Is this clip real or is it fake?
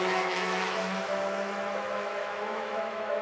fake